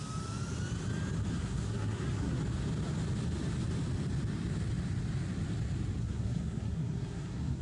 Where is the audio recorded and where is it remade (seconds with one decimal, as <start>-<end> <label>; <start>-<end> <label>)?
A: 0.0-1.3 recorded; 1.3-2.4 remade; 2.4-6.0 recorded; 6.0-7.6 remade